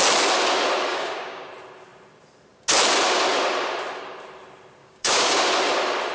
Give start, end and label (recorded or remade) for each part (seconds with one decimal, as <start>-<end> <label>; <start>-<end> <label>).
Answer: 0.0-0.9 recorded; 0.9-1.5 remade; 1.5-4.8 recorded; 4.8-5.4 remade; 5.4-6.1 recorded